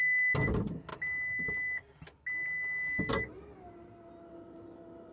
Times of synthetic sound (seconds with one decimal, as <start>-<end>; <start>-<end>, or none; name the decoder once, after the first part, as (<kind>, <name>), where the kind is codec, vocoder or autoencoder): none